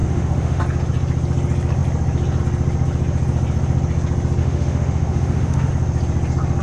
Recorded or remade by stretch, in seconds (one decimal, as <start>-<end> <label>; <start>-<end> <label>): 0.0-0.6 remade; 0.6-4.4 recorded; 4.4-5.7 remade; 5.7-6.6 recorded